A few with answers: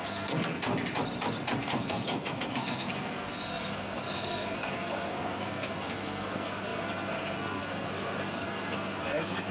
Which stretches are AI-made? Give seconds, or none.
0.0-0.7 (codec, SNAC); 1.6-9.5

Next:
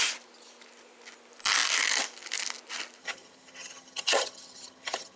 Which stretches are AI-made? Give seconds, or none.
3.0-5.2 (vocoder, HiFi-GAN)

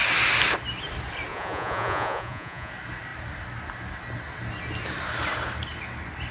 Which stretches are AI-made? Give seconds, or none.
1.3-2.7 (vocoder, Vocos)

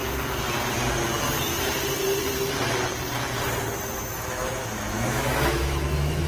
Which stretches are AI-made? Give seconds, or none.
3.8-6.3 (autoencoder, DAC-VAE)